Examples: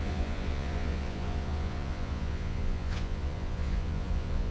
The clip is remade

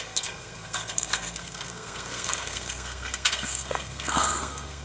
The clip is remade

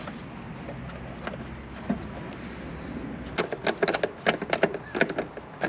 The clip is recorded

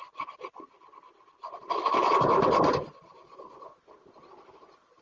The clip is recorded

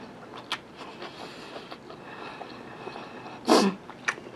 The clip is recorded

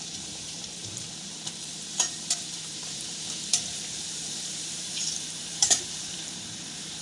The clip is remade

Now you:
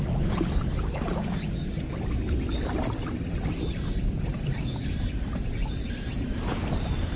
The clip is recorded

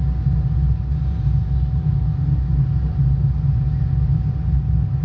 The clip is recorded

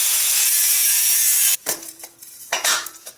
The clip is remade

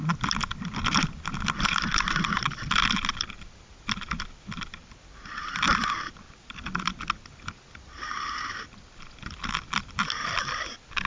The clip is recorded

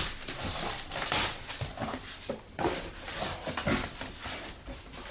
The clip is recorded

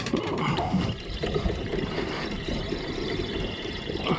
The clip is remade